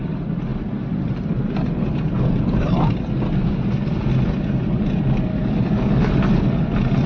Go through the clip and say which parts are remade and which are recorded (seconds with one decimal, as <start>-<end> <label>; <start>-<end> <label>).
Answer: 0.0-5.3 recorded; 5.3-6.1 remade; 6.1-7.1 recorded